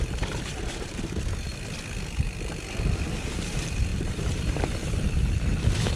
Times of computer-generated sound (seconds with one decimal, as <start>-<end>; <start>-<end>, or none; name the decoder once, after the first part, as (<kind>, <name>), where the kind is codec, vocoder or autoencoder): 0.0-1.5 (vocoder, BigVGAN v2); 3.1-6.0